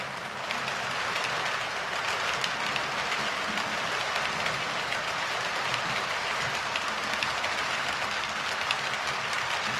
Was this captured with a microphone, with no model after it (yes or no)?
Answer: yes